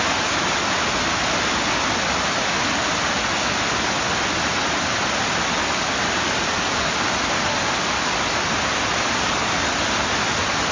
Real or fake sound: real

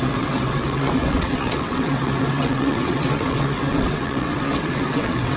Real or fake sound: fake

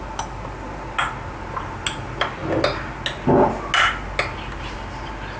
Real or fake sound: real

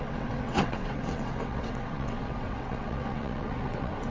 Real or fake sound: fake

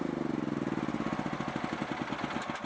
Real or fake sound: real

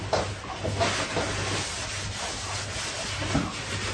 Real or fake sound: real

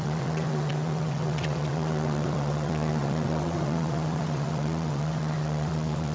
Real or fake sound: fake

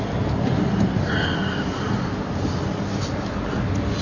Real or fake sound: real